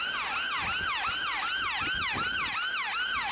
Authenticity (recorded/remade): recorded